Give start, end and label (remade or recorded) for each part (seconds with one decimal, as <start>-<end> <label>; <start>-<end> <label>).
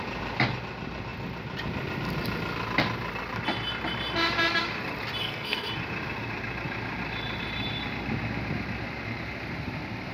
0.0-5.2 recorded; 5.2-5.7 remade; 5.7-10.1 recorded